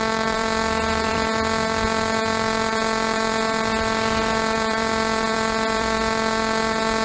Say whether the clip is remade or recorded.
remade